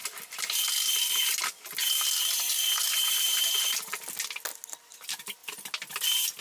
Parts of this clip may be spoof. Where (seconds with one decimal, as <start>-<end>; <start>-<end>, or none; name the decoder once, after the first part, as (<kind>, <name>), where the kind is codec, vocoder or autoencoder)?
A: none